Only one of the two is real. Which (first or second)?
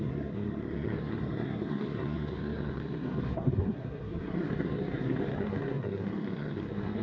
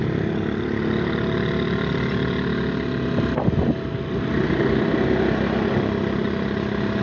second